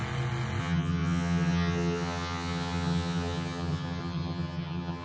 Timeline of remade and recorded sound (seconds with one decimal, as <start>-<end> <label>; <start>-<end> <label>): 0.0-0.6 recorded; 0.6-5.0 remade